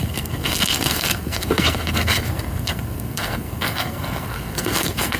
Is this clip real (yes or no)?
no